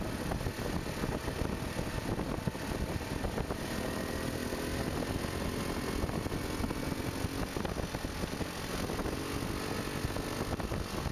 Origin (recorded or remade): recorded